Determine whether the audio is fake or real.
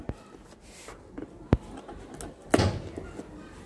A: real